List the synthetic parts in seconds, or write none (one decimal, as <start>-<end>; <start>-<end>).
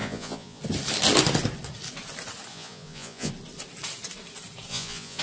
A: 0.0-0.6; 2.5-3.3; 4.7-5.2